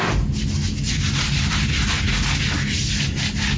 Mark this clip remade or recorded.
recorded